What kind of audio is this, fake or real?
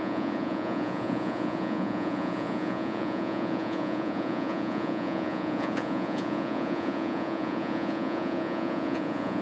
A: fake